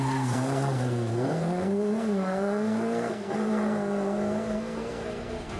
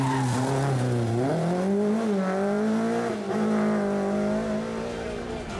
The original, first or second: second